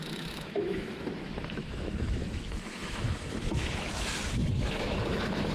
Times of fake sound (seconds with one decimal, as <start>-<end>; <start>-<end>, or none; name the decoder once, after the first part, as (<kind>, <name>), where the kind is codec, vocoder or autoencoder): 0.0-5.5 (autoencoder, DAC-VAE)